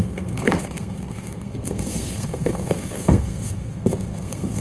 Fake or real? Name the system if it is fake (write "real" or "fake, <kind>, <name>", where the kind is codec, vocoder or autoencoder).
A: fake, codec, SNAC